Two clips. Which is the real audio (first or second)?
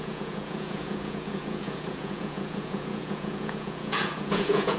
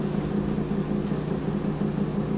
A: second